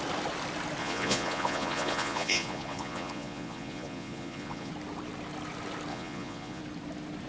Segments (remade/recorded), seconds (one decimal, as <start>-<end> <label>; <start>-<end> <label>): 0.0-0.8 recorded; 0.8-4.7 remade; 4.7-5.9 recorded; 5.9-6.6 remade; 6.6-7.3 recorded

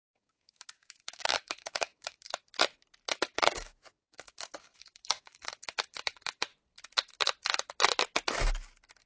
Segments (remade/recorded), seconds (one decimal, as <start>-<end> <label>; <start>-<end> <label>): 0.0-2.5 remade; 2.5-3.1 recorded; 3.1-6.5 remade; 6.5-9.1 recorded